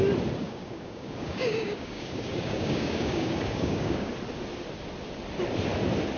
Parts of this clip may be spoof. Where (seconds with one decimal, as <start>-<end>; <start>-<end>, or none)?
0.4-4.1